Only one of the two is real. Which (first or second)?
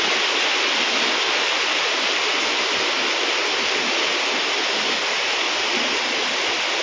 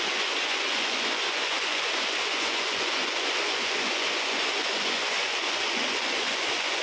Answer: first